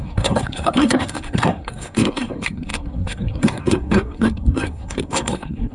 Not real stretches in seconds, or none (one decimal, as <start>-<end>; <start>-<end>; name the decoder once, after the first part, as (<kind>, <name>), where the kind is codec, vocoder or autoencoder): 0.0-5.7 (codec, SNAC)